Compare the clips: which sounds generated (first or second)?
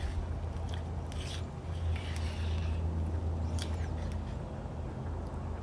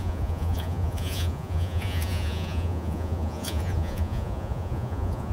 second